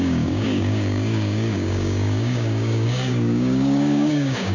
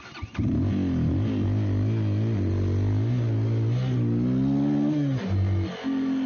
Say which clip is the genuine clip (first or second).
second